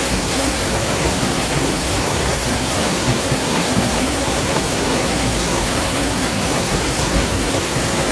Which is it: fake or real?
fake